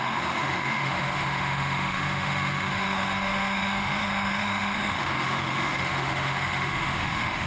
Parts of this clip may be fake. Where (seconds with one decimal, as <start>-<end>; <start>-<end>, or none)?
0.0-7.5